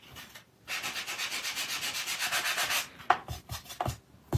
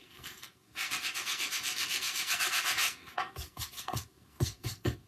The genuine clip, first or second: first